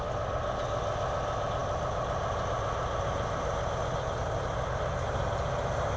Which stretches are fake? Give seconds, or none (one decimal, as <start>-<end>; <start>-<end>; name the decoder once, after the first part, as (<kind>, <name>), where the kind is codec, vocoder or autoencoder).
none